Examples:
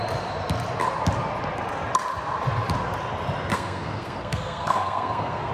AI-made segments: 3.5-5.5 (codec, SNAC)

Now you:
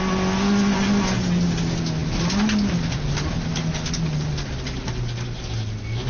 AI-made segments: none

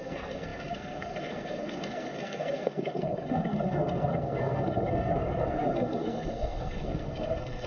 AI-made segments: 0.0-7.7 (codec, SNAC)

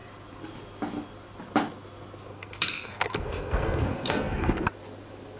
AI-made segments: 2.3-4.6 (codec, SNAC)

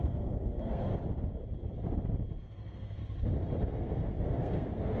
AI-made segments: 0.0-0.9 (codec, SNAC); 2.4-3.0; 3.7-5.0

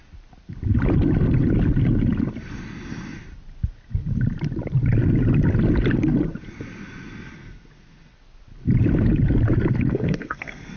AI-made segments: 9.9-10.8 (codec, SNAC)

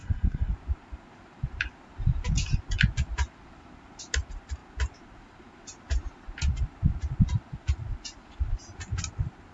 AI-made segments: 0.0-0.5 (codec, SNAC)

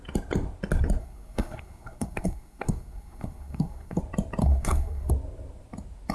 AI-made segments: 1.0-4.0 (codec, SNAC); 4.4-5.1